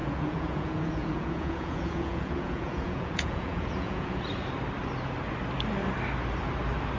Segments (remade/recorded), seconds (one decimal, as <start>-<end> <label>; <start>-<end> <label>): 0.0-4.2 remade; 4.2-7.0 recorded